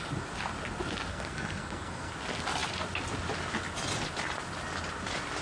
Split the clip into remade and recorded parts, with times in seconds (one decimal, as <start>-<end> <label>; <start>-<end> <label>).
0.0-1.1 recorded; 1.1-2.1 remade; 2.1-5.4 recorded